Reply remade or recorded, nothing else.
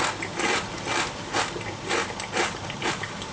recorded